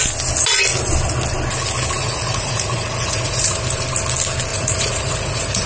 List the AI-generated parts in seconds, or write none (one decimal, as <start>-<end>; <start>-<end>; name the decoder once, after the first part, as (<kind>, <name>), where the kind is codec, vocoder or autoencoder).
2.0-3.6 (vocoder, Vocos); 4.5-5.7